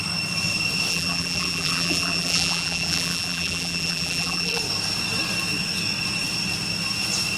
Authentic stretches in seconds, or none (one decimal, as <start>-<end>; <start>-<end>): 0.0-0.9; 4.6-7.4